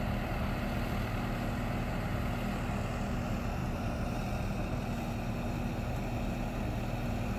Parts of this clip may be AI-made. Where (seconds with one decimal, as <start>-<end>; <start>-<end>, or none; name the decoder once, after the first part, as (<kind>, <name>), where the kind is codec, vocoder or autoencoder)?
none